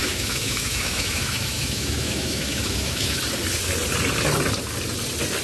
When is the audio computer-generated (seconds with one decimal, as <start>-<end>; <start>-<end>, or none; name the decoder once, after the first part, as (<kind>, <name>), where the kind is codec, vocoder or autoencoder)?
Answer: 0.0-3.2 (autoencoder, DAC-VAE)